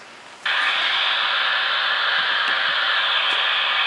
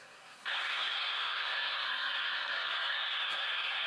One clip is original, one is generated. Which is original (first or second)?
first